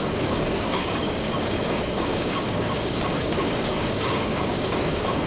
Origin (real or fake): fake